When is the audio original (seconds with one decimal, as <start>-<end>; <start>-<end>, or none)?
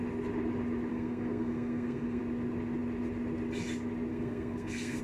0.0-0.9; 2.2-4.1